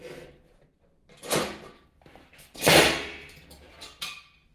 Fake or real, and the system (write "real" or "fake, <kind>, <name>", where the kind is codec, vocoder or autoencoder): fake, vocoder, BigVGAN v2